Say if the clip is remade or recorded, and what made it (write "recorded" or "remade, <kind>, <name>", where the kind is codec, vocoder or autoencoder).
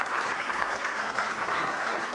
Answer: remade, codec, SNAC